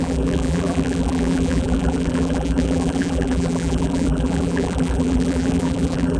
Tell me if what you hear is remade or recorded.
remade